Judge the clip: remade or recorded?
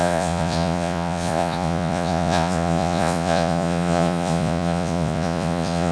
remade